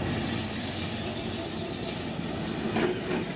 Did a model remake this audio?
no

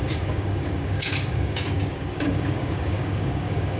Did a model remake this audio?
yes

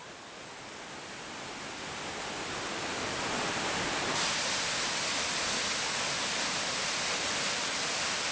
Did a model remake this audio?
no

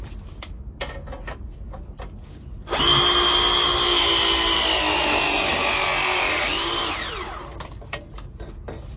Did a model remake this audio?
no